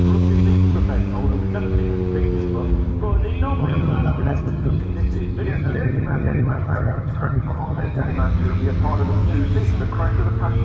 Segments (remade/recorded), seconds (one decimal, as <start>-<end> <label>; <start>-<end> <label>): 0.0-3.6 recorded; 3.6-4.8 remade; 4.8-5.5 recorded; 5.5-8.1 remade; 8.1-10.6 recorded